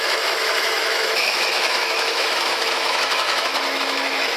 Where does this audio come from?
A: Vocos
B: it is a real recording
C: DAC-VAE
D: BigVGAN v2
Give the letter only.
C